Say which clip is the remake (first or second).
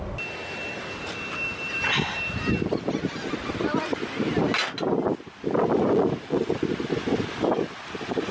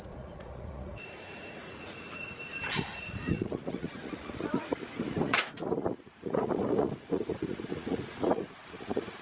second